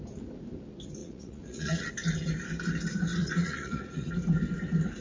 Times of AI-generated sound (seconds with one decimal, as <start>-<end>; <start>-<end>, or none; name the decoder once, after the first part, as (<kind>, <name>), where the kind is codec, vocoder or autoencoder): 1.0-1.9 (vocoder, Vocos); 3.2-4.1